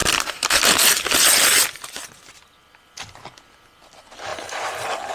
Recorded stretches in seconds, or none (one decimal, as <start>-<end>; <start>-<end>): 0.0-5.1